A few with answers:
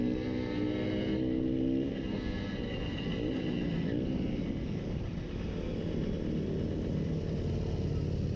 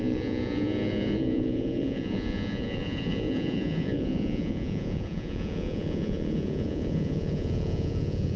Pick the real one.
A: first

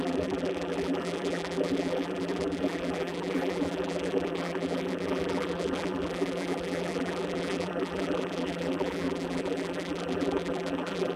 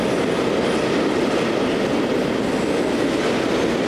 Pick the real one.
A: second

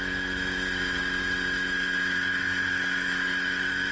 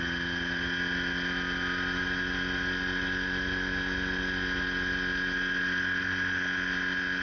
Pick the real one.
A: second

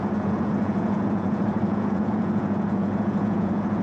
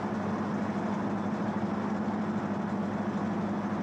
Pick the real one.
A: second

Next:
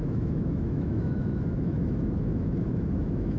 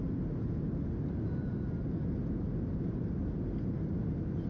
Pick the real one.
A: second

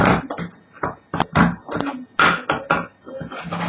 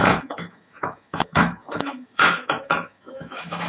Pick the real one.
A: first